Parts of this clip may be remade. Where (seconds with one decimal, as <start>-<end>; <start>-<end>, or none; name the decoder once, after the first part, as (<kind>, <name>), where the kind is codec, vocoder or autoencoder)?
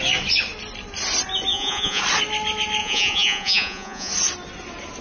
1.5-2.0 (vocoder, Vocos); 2.8-4.1